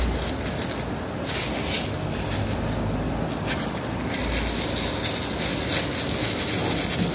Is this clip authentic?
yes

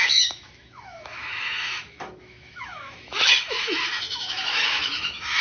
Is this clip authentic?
no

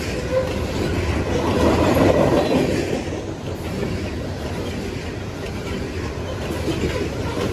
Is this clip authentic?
yes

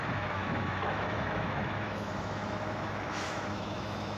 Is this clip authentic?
no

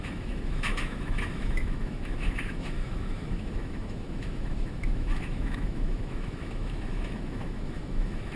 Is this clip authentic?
no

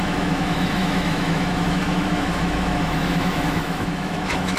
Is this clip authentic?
no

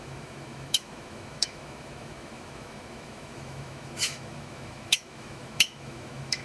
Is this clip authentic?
no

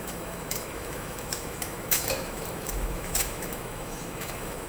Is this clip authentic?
no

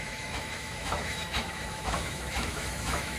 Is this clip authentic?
no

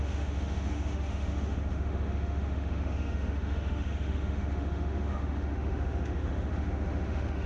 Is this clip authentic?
no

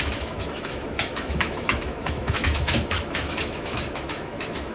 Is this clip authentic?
no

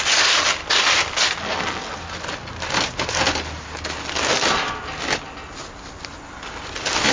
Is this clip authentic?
yes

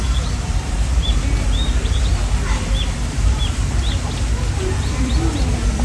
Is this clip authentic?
yes